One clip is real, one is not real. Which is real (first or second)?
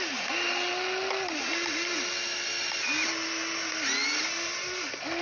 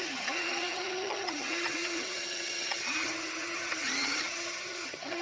first